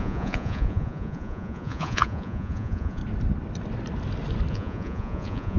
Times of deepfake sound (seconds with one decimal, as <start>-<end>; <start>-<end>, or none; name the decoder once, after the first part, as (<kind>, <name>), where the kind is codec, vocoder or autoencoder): 0.0-3.0 (vocoder, Vocos); 4.5-5.6